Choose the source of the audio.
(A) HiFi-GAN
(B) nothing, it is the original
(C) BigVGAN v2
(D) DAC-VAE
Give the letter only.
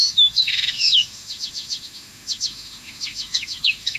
D